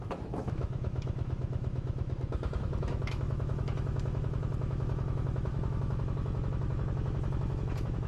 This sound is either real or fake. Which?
fake